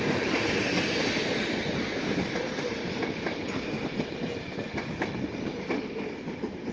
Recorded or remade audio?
remade